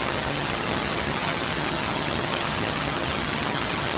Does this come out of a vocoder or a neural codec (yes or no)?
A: yes